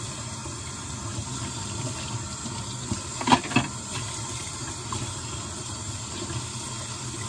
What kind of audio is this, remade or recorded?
recorded